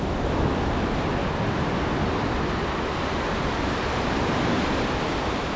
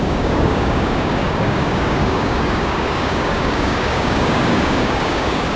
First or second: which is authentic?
first